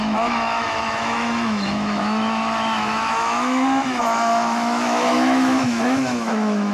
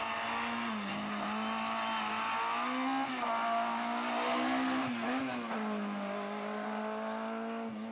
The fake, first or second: first